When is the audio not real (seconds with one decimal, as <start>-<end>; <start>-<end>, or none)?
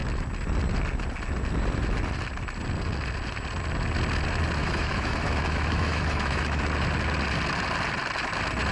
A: 4.6-6.6